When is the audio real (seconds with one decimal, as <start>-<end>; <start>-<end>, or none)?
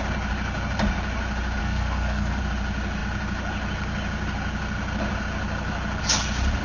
0.0-1.6; 2.4-6.6